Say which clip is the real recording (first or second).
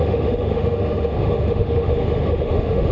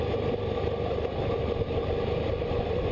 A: second